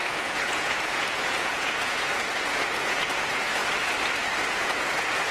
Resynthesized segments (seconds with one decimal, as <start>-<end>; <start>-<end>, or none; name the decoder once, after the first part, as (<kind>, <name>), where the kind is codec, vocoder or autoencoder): 0.0-3.6 (vocoder, Vocos); 4.5-5.3